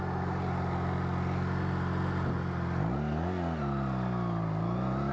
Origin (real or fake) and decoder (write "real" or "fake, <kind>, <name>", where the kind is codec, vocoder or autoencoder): real